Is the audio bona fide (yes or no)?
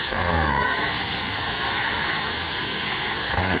no